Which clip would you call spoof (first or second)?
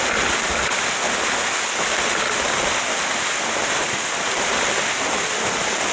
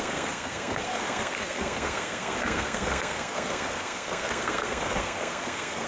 second